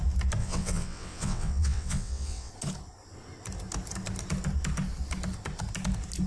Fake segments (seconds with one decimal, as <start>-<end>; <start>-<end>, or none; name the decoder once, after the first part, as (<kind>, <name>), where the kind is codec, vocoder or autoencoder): 0.4-2.5 (vocoder, WaveNeXt)